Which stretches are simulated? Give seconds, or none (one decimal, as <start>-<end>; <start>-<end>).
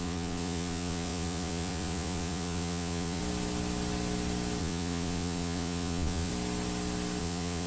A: 0.0-3.2; 4.6-6.3; 7.2-7.7